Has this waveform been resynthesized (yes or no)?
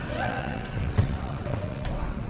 yes